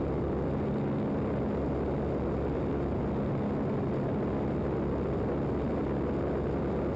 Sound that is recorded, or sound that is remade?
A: recorded